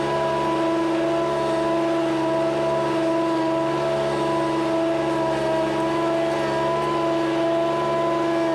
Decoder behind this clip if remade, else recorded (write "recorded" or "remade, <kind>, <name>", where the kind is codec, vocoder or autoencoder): recorded